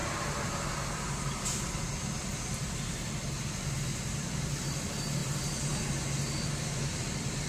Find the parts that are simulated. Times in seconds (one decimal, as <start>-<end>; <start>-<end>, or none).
none